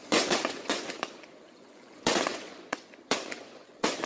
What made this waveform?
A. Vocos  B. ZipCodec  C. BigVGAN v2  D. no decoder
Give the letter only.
A